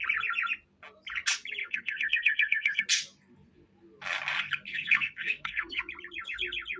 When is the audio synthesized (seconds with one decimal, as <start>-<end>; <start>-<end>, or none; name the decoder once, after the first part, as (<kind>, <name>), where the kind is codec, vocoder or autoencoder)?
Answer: 1.6-2.8 (codec, SNAC); 4.7-5.8